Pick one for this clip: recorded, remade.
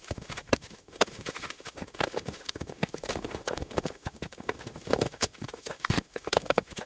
remade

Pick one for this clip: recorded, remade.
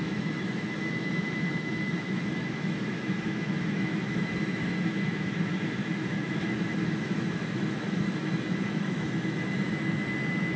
remade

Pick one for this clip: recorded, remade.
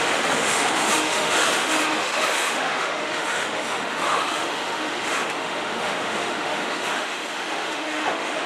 remade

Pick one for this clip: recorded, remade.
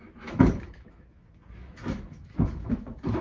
remade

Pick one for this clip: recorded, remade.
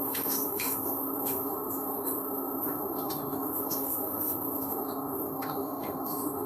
remade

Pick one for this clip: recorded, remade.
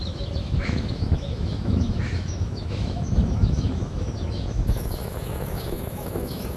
remade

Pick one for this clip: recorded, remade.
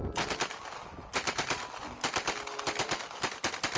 recorded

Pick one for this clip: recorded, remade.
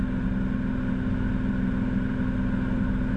recorded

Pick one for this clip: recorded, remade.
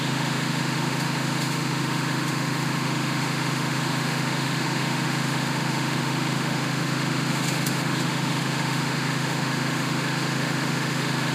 remade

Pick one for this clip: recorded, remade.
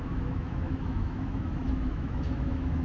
remade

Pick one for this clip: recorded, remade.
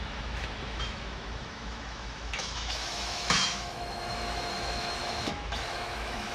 remade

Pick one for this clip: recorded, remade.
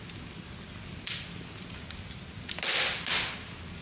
recorded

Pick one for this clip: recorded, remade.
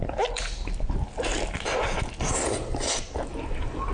recorded